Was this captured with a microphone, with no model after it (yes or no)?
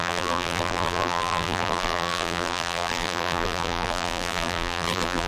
no